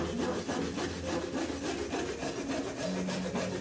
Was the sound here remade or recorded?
recorded